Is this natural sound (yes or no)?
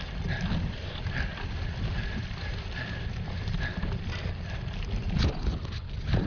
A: yes